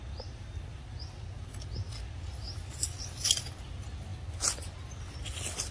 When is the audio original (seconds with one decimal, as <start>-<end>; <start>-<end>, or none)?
0.0-5.7